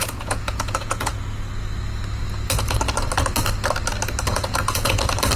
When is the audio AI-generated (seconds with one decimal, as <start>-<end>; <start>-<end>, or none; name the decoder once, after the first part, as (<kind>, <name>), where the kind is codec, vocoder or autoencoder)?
0.0-1.1 (vocoder, Vocos); 4.3-5.0